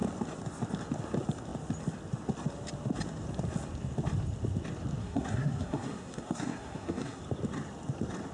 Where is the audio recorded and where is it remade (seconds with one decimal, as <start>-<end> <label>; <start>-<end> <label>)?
0.0-5.0 recorded; 5.0-7.2 remade; 7.2-8.3 recorded